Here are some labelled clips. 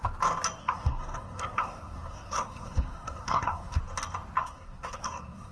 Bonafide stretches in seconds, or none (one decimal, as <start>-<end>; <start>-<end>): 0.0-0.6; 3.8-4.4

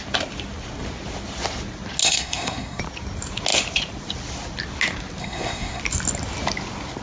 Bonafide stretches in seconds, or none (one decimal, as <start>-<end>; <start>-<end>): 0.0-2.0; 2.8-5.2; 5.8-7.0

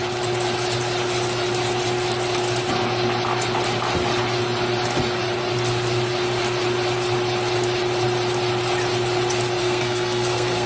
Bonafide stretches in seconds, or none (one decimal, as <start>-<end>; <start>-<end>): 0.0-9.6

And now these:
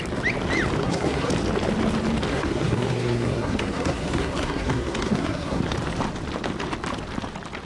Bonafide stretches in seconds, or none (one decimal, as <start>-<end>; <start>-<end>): 0.0-0.8; 1.3-2.3; 5.6-7.7

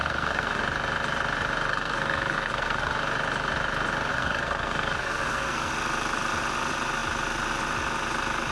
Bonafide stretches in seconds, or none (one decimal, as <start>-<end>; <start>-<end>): 0.6-1.7; 2.9-4.1; 5.7-8.5

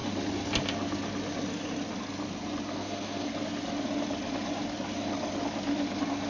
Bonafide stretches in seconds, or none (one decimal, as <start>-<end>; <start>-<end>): 0.0-2.7; 3.3-6.3

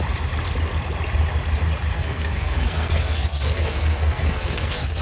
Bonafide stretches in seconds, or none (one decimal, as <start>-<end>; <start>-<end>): 0.0-1.9

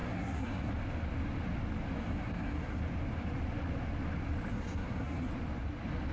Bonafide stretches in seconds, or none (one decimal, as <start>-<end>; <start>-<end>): 0.7-2.0; 2.8-4.5; 5.3-6.1